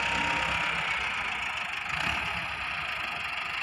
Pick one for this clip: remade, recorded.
recorded